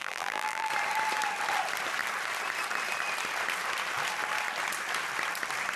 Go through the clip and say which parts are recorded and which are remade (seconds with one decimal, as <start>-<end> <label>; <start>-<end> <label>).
0.0-0.7 remade; 0.7-5.8 recorded